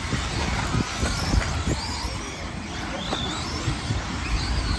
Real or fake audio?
real